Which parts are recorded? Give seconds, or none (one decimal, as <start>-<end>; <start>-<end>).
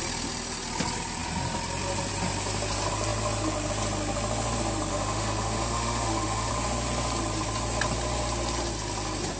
0.0-4.9; 6.5-9.4